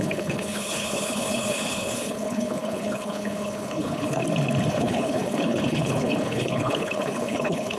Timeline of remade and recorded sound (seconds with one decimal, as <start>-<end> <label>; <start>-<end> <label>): 0.0-4.2 remade; 4.2-4.7 recorded; 4.7-7.8 remade